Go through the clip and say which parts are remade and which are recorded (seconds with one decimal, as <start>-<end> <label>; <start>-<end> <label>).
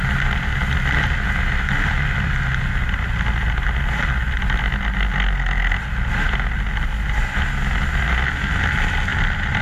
0.0-9.1 recorded; 9.1-9.6 remade